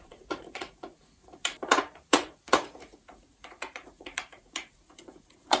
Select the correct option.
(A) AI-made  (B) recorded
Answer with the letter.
A